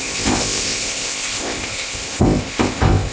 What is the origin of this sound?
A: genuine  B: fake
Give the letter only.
B